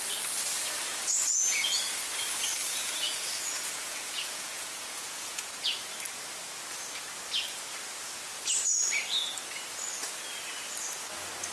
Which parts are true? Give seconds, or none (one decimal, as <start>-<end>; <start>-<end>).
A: 0.0-0.9; 1.8-2.6; 5.5-11.5